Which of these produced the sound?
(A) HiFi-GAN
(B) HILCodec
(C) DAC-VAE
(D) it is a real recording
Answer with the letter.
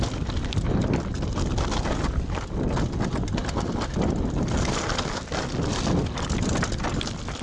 D